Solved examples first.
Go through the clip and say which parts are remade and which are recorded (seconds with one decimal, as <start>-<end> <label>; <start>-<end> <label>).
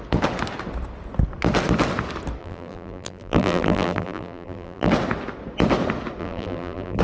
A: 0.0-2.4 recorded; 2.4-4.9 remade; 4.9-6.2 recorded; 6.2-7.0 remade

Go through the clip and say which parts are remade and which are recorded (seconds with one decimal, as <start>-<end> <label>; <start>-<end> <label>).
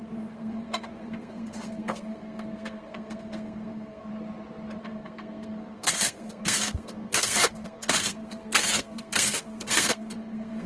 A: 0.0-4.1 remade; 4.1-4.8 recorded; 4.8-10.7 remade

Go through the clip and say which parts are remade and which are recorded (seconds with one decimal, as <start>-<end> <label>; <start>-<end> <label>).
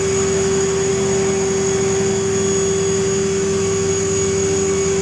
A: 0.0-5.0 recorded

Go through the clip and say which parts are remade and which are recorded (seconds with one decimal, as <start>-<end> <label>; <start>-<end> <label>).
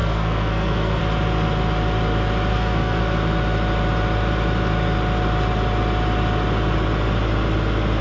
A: 0.0-1.0 remade; 1.0-2.5 recorded; 2.5-3.0 remade; 3.0-8.0 recorded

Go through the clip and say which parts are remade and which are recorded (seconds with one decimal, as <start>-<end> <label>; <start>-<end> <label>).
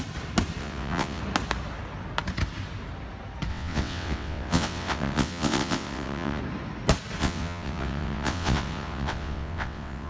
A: 0.0-0.6 recorded; 0.6-1.2 remade; 1.2-3.5 recorded; 3.5-6.4 remade; 6.4-7.2 recorded; 7.2-10.1 remade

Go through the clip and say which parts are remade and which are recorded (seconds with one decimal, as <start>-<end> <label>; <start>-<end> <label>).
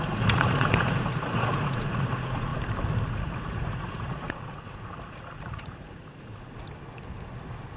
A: 0.0-2.5 remade; 2.5-3.1 recorded; 3.1-6.3 remade; 6.3-7.8 recorded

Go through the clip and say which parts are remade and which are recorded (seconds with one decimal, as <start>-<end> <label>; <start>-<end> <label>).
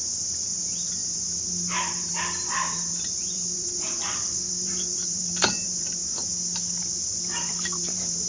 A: 0.0-6.0 remade; 6.0-6.8 recorded; 6.8-8.3 remade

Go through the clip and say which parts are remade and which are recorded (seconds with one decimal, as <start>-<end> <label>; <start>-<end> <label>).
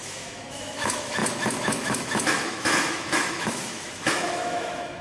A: 0.0-5.0 remade